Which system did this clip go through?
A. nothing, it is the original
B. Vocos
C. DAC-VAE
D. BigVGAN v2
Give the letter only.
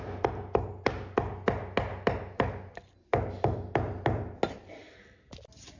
A